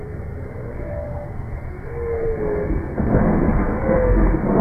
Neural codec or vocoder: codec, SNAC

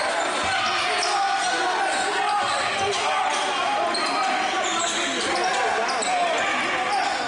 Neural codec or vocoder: none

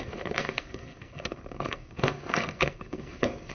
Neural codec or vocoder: codec, SNAC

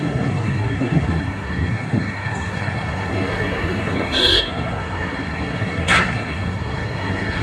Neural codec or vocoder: codec, SNAC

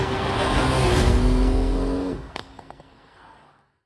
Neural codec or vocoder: codec, SNAC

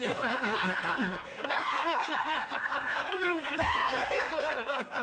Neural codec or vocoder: codec, SNAC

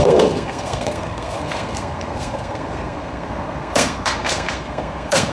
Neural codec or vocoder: codec, SNAC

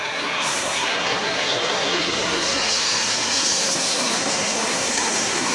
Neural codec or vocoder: codec, SNAC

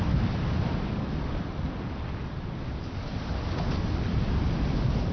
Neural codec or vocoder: none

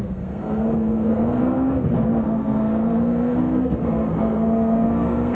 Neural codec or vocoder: codec, SNAC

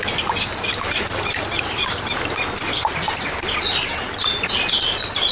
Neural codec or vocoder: none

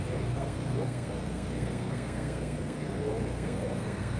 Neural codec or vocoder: codec, SNAC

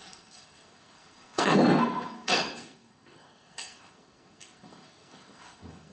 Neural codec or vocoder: codec, SNAC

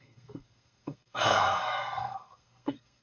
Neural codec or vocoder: codec, SNAC